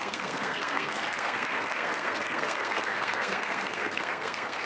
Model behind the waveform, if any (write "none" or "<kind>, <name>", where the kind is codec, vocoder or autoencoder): codec, SNAC